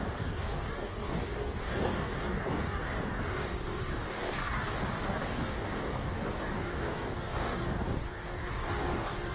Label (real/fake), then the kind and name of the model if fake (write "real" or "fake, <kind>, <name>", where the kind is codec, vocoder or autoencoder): fake, codec, DAC